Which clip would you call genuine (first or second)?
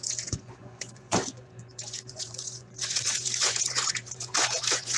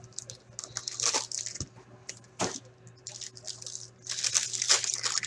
second